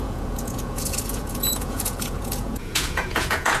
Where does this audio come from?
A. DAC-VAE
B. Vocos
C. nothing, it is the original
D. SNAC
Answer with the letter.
B